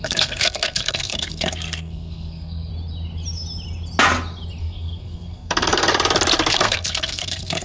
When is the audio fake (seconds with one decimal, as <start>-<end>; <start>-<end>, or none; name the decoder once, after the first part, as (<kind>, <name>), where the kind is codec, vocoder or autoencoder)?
0.0-2.7 (codec, SNAC); 4.6-5.9; 6.5-7.6